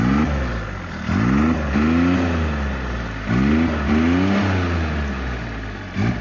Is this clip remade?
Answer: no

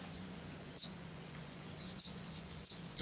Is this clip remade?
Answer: yes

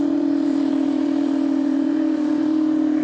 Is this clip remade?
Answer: yes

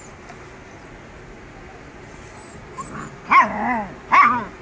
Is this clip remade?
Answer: no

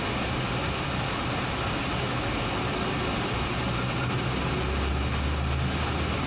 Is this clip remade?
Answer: no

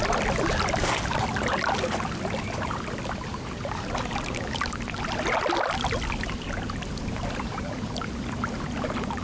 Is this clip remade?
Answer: no